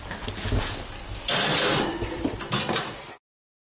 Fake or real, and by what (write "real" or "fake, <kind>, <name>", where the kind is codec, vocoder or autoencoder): real